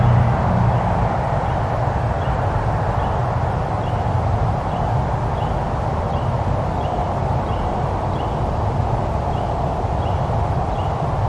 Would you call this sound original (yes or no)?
yes